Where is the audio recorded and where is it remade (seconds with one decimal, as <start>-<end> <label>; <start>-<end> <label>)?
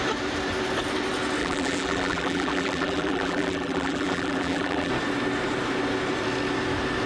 0.0-1.4 recorded; 1.4-4.9 remade; 4.9-7.1 recorded